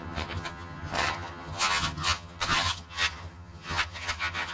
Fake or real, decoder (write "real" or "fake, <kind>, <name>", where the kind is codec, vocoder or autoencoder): fake, vocoder, HiFi-GAN